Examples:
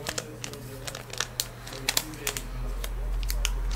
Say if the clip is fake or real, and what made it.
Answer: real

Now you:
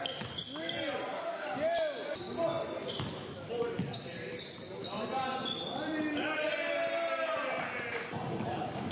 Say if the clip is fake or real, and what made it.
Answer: real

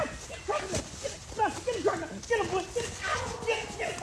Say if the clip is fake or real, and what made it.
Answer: real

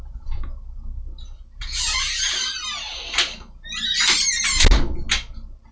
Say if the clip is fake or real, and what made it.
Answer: real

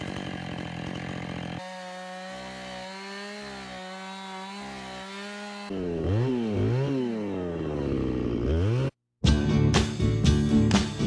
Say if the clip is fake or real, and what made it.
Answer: real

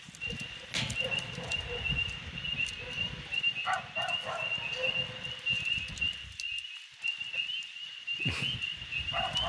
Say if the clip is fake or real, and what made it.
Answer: real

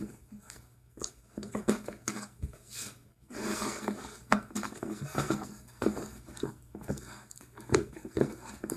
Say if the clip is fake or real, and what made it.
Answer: fake, codec, SNAC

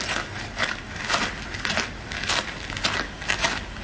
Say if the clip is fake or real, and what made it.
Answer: fake, vocoder, BigVGAN v2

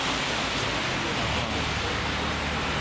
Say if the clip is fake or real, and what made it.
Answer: real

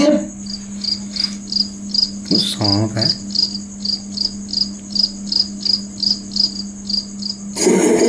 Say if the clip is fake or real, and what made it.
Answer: real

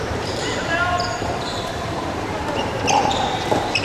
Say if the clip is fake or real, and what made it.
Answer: fake, vocoder, BigVGAN v2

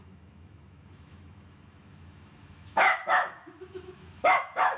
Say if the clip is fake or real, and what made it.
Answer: fake, autoencoder, DAC-VAE